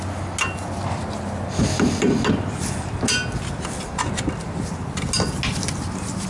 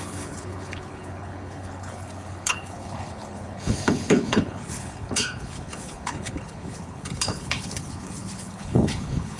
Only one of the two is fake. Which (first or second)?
second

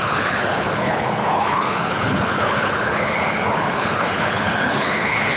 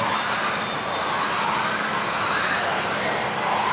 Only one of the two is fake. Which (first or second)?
first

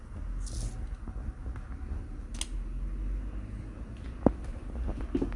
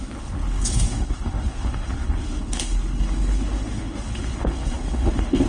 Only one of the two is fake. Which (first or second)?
second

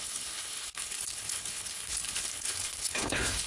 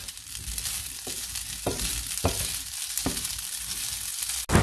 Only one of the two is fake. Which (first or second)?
first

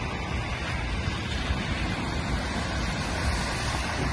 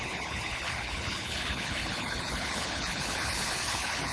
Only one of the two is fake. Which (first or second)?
second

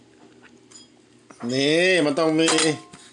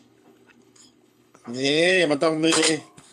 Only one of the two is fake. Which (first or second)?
second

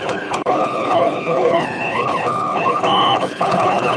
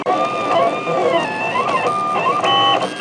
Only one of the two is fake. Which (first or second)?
first